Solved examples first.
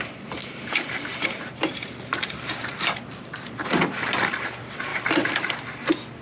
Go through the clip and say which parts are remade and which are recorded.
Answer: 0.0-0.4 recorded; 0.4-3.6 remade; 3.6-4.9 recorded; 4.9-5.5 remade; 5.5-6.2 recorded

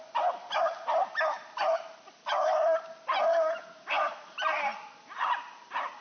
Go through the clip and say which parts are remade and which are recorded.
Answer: 0.0-6.0 recorded